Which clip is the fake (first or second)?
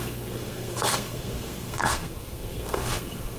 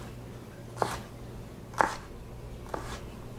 first